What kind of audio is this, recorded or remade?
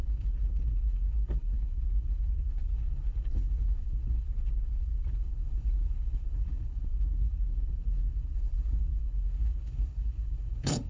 remade